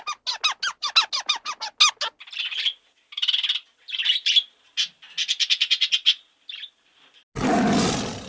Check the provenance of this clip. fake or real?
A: real